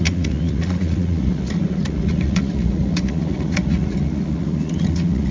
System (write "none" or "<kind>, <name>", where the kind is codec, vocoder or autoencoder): vocoder, Vocos